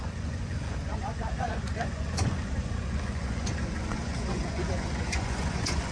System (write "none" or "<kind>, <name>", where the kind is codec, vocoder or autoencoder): vocoder, Vocos